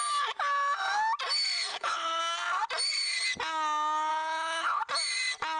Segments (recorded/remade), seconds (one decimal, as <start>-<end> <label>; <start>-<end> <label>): 0.0-1.7 recorded; 1.7-2.2 remade; 2.2-4.1 recorded; 4.1-4.8 remade; 4.8-5.6 recorded